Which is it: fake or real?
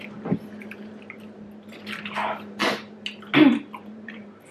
real